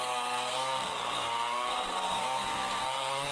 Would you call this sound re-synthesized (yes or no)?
yes